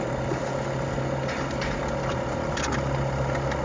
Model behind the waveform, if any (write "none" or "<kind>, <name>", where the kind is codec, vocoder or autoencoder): none